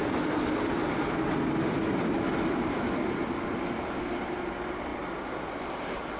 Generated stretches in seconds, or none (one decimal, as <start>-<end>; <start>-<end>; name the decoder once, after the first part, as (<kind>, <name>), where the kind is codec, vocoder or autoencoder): none